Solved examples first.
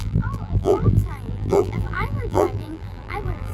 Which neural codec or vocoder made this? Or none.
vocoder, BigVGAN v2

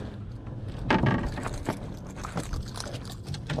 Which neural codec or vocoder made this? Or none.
none